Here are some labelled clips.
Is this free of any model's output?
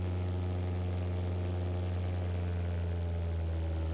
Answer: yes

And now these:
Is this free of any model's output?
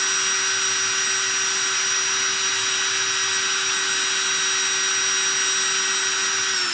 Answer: yes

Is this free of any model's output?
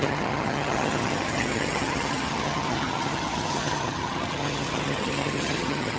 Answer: no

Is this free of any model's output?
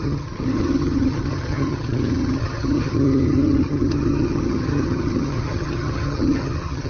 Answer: no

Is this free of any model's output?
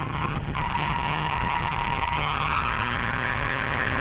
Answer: no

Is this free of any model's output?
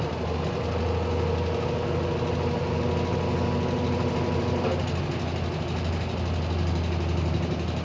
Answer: yes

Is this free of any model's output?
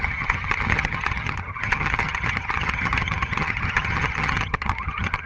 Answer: no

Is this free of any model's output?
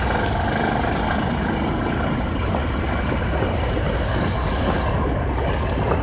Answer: yes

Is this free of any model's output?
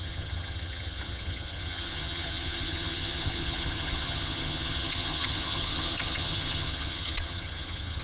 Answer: no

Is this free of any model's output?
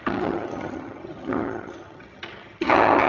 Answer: no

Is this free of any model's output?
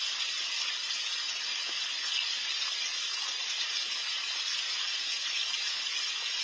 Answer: yes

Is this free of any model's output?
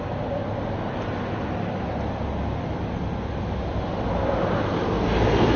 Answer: yes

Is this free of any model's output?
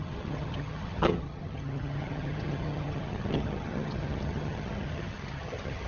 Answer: no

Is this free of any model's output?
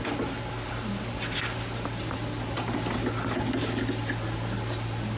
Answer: yes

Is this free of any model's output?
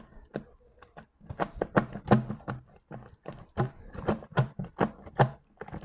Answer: yes